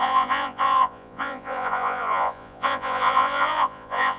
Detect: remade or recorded remade